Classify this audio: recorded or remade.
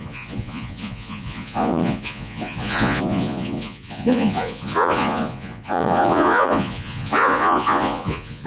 remade